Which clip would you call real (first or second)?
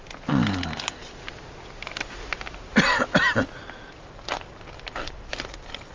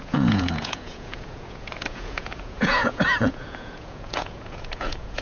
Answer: first